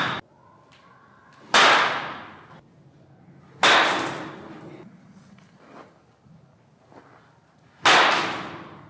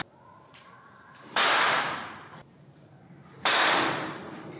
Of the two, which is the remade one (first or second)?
second